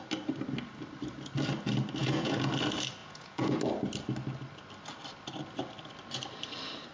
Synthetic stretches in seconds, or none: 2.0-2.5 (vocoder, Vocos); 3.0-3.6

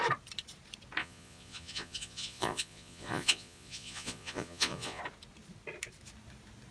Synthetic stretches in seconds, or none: 1.0-5.0 (vocoder, Vocos)

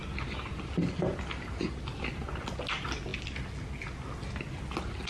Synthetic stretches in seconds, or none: none

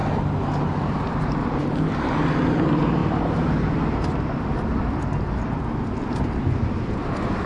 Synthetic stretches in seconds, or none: none

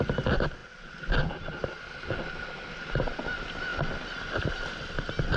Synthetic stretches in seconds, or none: none

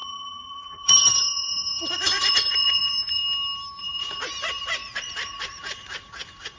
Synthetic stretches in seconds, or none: 0.0-3.2 (vocoder, Vocos); 3.8-6.6

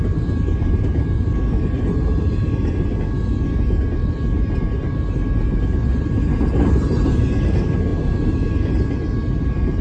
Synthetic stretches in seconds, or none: none